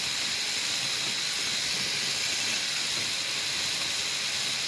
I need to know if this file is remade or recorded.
recorded